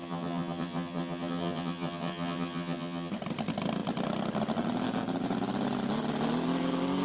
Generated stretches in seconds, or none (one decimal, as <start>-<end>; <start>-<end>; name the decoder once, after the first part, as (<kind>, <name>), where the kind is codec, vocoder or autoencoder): 0.0-3.1 (vocoder, HiFi-GAN)